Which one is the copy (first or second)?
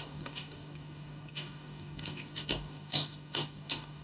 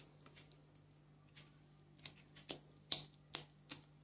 first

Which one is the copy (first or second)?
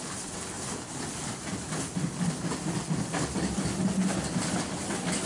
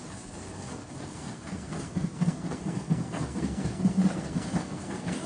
second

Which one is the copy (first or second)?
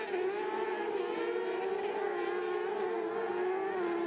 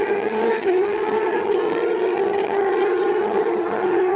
second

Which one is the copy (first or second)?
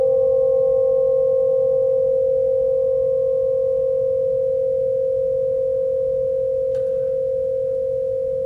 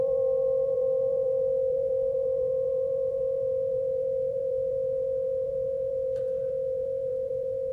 second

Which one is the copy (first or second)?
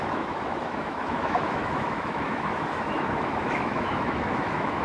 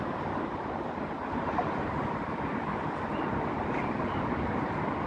first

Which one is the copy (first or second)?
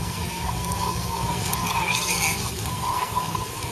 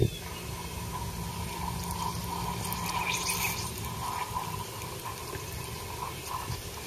first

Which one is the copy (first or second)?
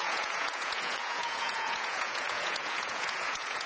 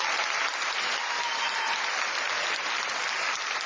first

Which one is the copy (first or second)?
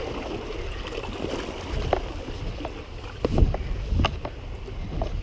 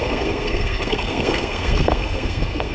second